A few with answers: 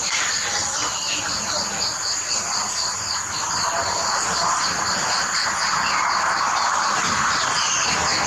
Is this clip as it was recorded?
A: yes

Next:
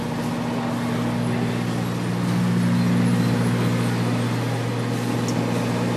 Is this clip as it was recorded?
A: yes